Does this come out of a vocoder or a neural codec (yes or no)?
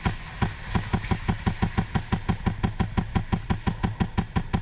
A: no